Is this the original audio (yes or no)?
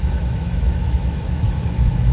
no